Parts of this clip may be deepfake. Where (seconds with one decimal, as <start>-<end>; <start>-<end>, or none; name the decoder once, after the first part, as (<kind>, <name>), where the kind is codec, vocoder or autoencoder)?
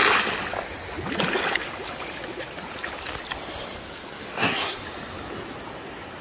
4.3-4.8 (codec, SNAC)